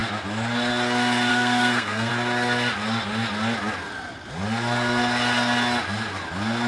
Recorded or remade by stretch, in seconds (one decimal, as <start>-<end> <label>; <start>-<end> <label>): 0.0-1.3 recorded; 1.3-2.1 remade; 2.1-6.7 recorded

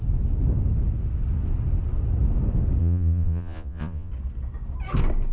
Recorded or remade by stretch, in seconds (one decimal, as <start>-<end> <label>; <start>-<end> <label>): 0.0-2.8 recorded; 2.8-4.1 remade; 4.1-5.3 recorded

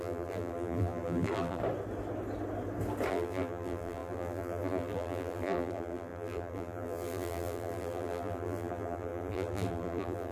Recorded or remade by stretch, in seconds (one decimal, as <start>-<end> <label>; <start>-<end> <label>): 0.0-1.6 remade; 1.6-3.1 recorded; 3.1-10.3 remade

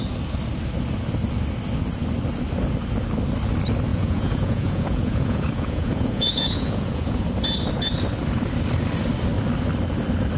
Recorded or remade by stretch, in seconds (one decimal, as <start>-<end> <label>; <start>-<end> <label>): 0.0-3.9 recorded; 3.9-7.3 remade; 7.3-10.4 recorded

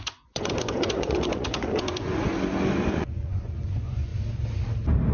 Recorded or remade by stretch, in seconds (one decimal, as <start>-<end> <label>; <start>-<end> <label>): 0.0-2.1 remade; 2.1-2.7 recorded; 2.7-4.1 remade; 4.1-5.1 recorded